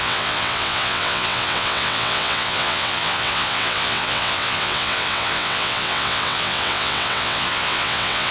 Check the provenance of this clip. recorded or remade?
remade